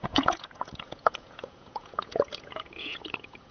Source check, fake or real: fake